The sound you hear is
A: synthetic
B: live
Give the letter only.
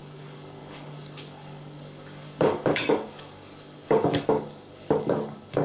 A